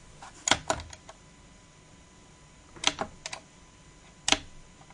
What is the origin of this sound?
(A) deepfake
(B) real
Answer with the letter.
B